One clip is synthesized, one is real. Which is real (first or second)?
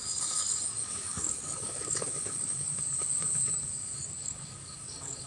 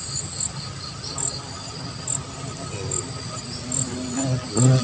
second